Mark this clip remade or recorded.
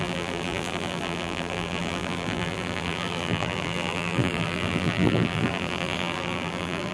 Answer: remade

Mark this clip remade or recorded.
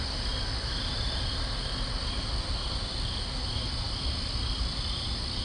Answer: recorded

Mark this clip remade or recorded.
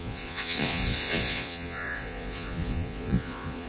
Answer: remade